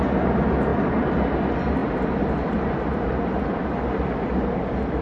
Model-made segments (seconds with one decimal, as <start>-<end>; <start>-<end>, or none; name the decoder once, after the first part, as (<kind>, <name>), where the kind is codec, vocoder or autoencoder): none